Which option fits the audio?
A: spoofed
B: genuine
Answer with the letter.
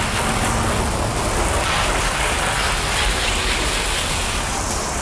B